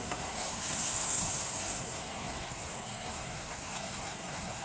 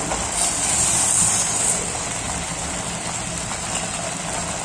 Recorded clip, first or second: second